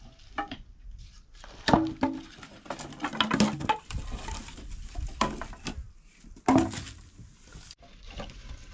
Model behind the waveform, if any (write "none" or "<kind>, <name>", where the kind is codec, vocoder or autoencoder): none